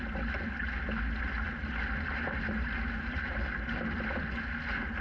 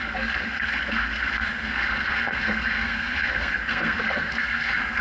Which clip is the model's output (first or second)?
second